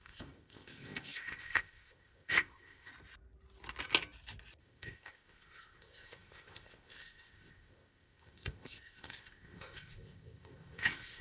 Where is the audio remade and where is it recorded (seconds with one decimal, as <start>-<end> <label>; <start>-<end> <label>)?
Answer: 0.0-2.9 remade; 2.9-4.6 recorded; 4.6-11.2 remade